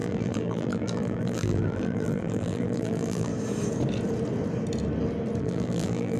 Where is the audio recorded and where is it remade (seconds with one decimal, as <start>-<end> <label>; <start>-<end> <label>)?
0.0-3.3 remade; 3.3-5.4 recorded; 5.4-6.2 remade